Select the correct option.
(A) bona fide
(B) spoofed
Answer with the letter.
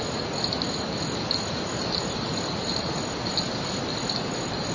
A